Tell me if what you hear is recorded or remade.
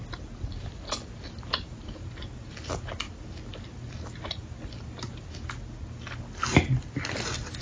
recorded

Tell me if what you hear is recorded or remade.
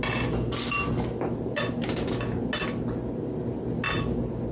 recorded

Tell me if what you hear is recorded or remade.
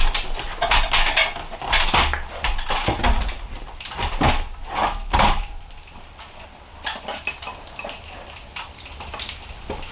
recorded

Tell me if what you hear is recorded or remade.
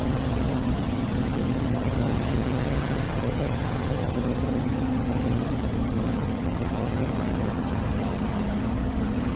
remade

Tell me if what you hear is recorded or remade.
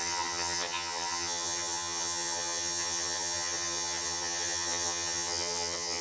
remade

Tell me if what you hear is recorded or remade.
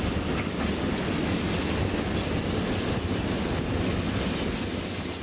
recorded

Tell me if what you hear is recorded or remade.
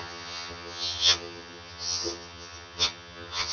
remade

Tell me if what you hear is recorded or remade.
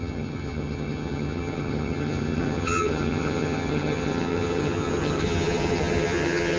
remade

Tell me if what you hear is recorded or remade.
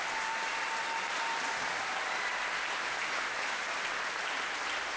recorded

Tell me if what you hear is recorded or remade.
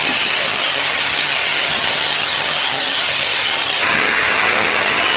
remade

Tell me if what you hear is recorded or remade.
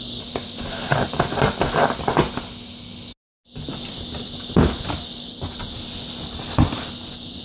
recorded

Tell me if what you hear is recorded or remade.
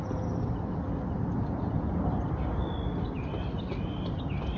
recorded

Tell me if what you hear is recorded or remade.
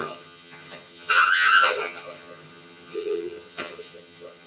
remade